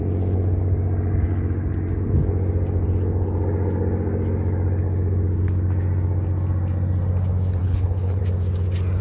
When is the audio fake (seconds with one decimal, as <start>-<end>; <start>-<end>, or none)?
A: 7.6-8.2